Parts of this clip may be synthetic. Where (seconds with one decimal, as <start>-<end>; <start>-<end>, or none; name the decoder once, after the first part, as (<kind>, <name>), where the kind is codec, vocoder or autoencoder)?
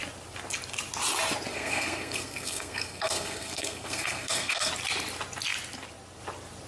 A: 1.5-4.7 (codec, SNAC)